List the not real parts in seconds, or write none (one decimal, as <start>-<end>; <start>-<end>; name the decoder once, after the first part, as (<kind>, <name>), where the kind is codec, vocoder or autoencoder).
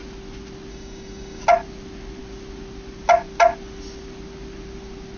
0.7-1.4 (codec, DAC)